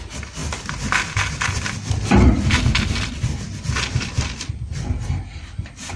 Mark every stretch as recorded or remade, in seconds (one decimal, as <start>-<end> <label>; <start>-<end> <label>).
0.0-6.0 recorded